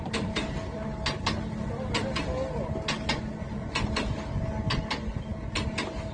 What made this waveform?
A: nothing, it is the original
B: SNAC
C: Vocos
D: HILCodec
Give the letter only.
A